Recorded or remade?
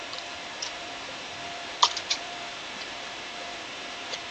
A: remade